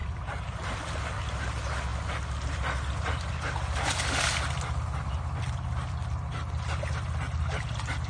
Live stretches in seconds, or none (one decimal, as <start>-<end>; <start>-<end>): 0.0-8.1